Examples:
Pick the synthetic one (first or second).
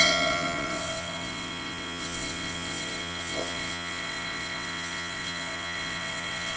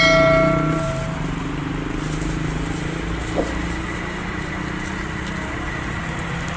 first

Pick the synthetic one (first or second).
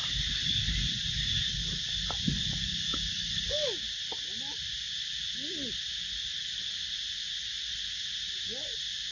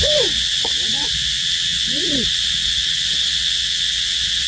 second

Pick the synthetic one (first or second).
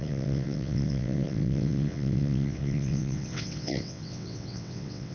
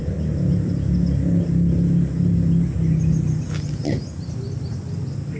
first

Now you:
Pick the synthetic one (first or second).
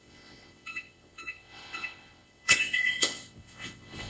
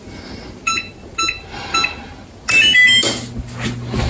first